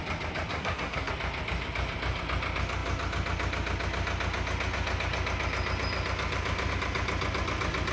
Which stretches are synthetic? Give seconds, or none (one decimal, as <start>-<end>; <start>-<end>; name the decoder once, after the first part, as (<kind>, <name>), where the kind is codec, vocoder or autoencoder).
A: 0.5-1.1 (codec, SNAC)